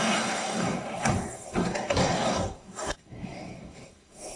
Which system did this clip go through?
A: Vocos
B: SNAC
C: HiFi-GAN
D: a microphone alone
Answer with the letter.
B